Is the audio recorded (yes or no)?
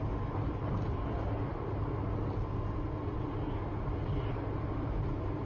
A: yes